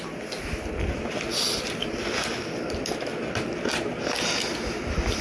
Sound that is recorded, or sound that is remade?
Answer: recorded